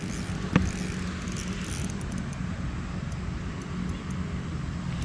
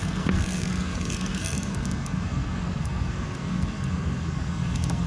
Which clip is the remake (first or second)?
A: second